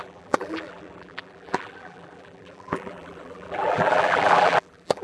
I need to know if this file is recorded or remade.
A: remade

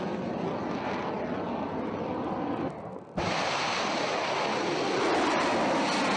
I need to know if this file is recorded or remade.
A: recorded